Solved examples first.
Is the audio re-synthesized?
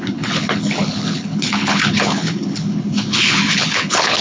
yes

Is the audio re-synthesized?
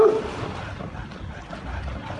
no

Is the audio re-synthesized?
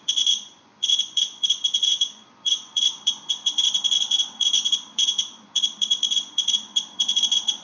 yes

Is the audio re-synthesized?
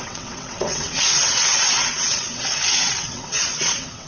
yes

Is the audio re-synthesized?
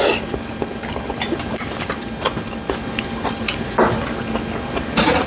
no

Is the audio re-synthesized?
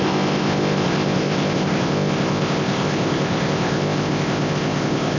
yes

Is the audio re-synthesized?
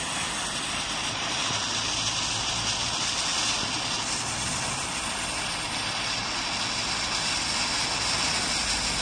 no